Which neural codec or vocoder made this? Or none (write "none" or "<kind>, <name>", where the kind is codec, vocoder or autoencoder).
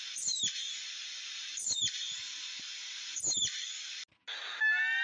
none